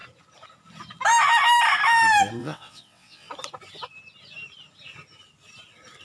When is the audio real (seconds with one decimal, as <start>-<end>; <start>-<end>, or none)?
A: 0.0-2.4; 3.3-6.0